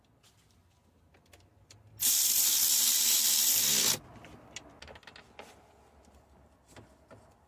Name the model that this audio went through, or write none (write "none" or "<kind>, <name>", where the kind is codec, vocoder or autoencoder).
none